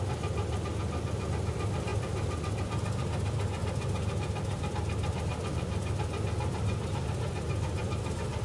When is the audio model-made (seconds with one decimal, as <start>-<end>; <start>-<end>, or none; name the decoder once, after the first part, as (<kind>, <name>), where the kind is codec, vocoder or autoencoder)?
none